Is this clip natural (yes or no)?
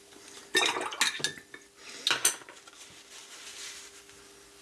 yes